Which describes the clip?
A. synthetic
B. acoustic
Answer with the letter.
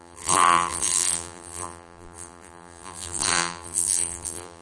A